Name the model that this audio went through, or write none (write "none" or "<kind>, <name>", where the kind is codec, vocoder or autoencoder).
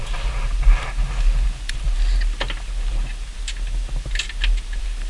none